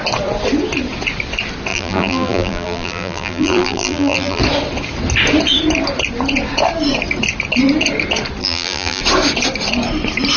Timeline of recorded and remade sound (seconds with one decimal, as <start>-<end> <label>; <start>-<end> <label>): 0.0-1.7 recorded; 1.7-4.4 remade; 4.4-8.4 recorded; 8.4-9.0 remade; 9.0-10.4 recorded